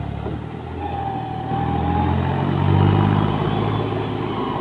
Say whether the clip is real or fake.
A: real